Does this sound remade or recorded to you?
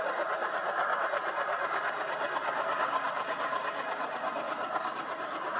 recorded